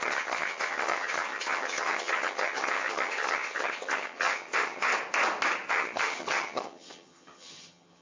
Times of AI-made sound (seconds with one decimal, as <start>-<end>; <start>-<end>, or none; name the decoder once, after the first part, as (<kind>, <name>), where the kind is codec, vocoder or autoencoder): 0.0-4.9 (vocoder, HiFi-GAN); 5.7-8.0